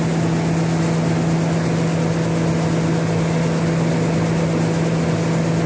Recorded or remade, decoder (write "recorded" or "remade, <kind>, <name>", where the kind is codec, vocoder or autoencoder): recorded